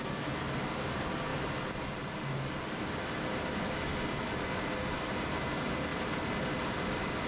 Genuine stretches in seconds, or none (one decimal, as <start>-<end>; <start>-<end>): 0.0-7.3